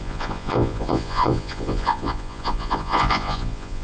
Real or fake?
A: fake